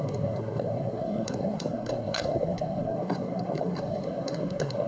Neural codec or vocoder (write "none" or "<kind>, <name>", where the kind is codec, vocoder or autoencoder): codec, SNAC